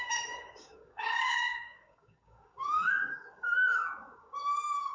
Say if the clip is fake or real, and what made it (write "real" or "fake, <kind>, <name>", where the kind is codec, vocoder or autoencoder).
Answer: fake, codec, DAC